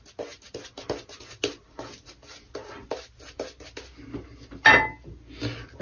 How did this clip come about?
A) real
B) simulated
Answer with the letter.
A